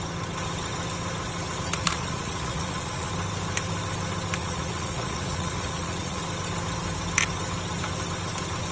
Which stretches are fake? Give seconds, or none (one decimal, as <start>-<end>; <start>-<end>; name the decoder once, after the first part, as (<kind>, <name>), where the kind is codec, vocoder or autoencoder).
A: 1.7-3.1 (vocoder, Vocos); 4.4-6.2